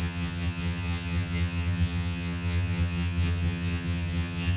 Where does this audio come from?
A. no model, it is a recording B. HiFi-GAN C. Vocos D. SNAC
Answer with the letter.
B